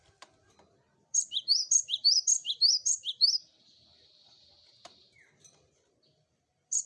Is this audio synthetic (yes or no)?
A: yes